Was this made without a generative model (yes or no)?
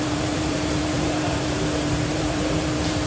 no